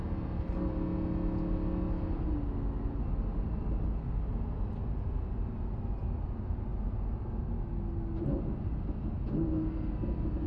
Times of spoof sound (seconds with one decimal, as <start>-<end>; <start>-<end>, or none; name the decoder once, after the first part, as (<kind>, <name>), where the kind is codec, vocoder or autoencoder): none